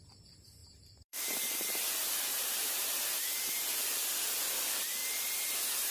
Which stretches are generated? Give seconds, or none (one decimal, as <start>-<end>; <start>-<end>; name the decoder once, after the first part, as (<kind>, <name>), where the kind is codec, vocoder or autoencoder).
0.6-4.1 (vocoder, BigVGAN v2)